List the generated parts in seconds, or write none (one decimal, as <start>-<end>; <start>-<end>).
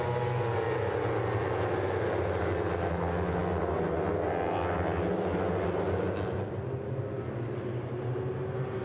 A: none